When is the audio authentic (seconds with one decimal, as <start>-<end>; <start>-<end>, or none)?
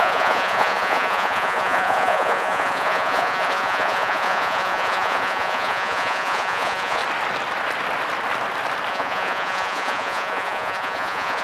7.0-8.9